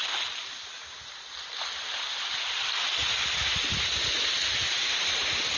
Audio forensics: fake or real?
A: real